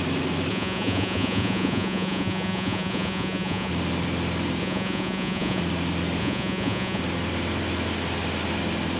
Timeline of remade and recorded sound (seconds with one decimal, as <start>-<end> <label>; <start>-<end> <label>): 0.0-0.5 recorded; 0.5-3.7 remade; 3.7-4.6 recorded; 4.6-5.6 remade; 5.6-6.2 recorded; 6.2-7.0 remade; 7.0-9.0 recorded